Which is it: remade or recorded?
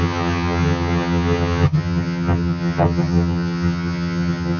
remade